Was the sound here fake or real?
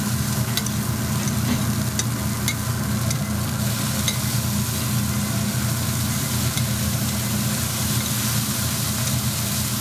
real